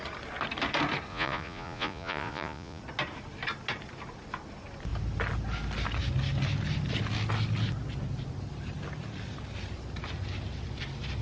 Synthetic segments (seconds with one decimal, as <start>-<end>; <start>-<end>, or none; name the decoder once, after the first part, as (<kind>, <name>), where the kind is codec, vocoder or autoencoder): 1.1-2.8 (vocoder, Vocos)